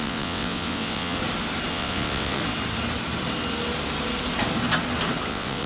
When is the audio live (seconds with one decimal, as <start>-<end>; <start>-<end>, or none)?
1.2-1.7; 2.4-5.3